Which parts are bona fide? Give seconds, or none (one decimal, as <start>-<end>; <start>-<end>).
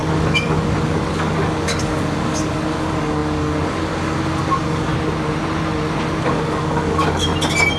4.9-6.2; 7.3-7.8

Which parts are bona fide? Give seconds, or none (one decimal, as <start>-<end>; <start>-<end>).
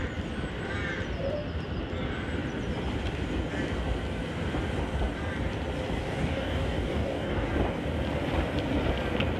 0.0-6.0; 7.5-9.4